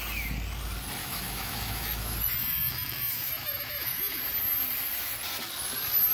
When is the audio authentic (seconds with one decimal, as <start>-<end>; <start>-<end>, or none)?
0.0-1.0; 4.2-6.1